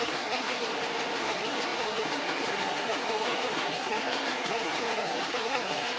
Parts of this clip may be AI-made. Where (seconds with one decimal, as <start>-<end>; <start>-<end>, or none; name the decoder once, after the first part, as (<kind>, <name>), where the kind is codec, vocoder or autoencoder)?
0.0-0.7 (codec, SNAC); 1.2-6.0